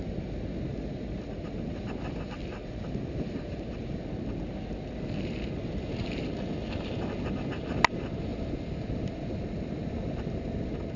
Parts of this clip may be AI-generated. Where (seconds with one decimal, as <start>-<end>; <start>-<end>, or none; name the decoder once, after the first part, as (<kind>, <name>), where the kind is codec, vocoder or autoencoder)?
0.7-1.9 (vocoder, BigVGAN v2); 2.6-4.0

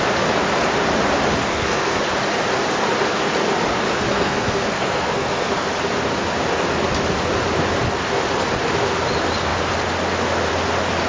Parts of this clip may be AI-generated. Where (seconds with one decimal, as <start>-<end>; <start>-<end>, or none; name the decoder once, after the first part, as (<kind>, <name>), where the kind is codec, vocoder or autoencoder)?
1.5-2.0 (codec, SNAC); 4.1-5.7

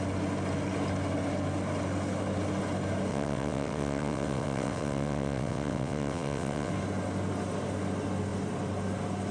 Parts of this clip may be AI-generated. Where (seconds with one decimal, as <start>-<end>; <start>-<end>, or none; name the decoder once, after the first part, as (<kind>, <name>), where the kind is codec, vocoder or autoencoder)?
3.1-6.7 (vocoder, WaveNeXt)

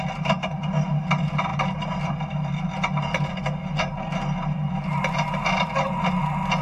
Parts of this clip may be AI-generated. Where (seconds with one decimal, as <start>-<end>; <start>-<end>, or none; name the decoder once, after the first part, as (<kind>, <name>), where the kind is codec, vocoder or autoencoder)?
none

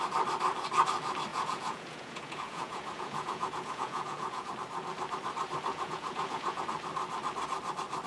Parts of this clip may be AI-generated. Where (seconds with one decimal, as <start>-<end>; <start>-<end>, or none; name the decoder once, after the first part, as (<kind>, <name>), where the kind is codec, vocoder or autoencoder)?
1.3-4.5 (vocoder, Vocos); 5.7-6.6